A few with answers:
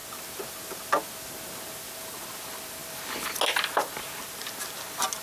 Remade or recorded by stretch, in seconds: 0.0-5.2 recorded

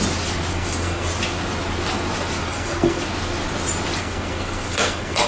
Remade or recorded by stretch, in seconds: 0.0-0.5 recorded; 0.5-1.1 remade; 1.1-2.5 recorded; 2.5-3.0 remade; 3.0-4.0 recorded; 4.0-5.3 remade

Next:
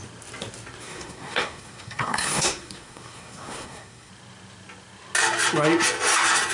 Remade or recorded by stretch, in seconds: 0.0-0.8 recorded; 0.8-4.1 remade; 4.1-6.5 recorded